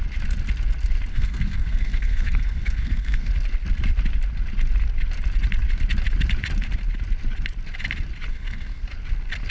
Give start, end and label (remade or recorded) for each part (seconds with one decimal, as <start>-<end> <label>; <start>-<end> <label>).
0.0-1.1 recorded; 1.1-3.3 remade; 3.3-8.3 recorded; 8.3-8.8 remade; 8.8-9.5 recorded